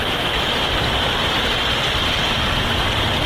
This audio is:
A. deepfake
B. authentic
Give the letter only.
B